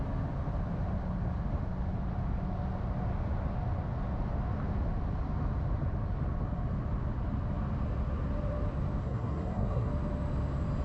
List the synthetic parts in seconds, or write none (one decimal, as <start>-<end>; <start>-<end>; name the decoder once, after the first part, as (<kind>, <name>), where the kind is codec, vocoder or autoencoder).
9.0-9.9 (codec, SNAC)